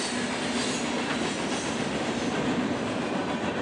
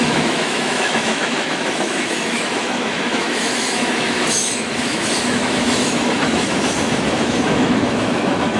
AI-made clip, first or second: second